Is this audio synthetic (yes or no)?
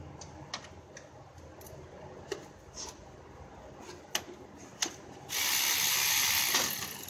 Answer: no